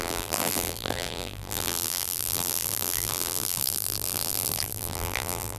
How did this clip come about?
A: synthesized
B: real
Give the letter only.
A